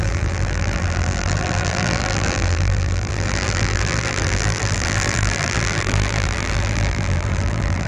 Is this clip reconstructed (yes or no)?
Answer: yes